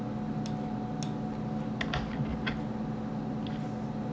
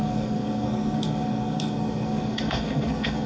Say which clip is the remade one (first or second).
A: second